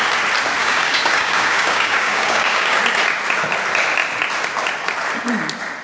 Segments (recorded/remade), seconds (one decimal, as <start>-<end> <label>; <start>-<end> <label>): 0.0-0.6 recorded; 0.6-2.8 remade; 2.8-5.8 recorded